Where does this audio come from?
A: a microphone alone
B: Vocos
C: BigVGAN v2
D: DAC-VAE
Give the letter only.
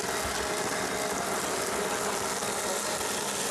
A